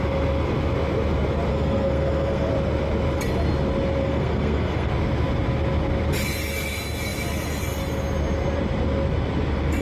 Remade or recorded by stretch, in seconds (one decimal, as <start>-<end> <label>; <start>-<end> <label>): 0.0-1.5 recorded; 1.5-2.5 remade; 2.5-4.0 recorded; 4.0-4.9 remade; 4.9-9.8 recorded